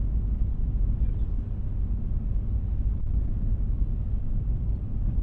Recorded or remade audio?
recorded